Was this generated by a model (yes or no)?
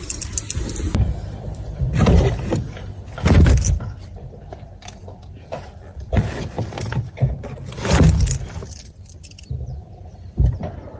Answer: yes